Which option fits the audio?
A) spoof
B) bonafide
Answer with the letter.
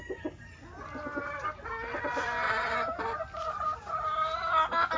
B